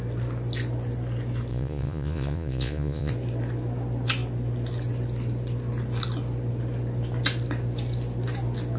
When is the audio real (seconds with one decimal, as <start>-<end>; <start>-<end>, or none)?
0.0-1.5; 3.1-8.8